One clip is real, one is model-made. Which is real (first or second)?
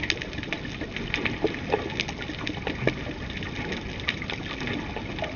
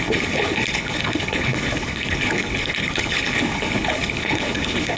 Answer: first